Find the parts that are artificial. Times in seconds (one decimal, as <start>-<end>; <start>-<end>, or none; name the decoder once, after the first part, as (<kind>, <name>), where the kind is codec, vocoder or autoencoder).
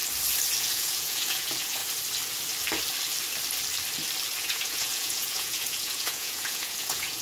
0.6-1.8 (vocoder, Vocos); 4.4-7.2